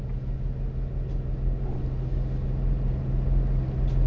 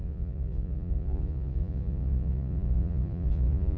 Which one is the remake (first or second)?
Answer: second